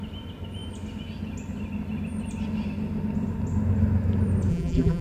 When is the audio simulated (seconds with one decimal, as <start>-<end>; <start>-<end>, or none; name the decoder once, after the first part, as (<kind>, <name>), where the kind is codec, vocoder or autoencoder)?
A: 4.5-5.0 (vocoder, BigVGAN v2)